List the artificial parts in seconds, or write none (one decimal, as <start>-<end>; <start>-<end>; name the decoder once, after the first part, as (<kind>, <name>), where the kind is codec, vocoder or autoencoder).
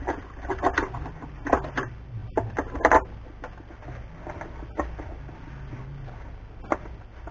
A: 2.2-3.2 (vocoder, BigVGAN v2)